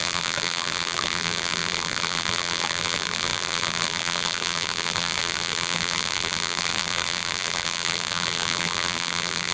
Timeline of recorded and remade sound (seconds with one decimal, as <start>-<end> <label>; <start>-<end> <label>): 0.0-9.5 remade